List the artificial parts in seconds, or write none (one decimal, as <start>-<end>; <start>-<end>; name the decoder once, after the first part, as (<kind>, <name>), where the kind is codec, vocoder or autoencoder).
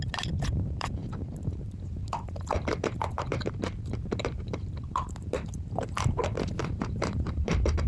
0.0-7.9 (vocoder, BigVGAN v2)